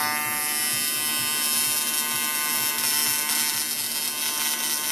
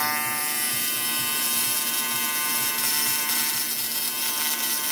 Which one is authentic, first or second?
first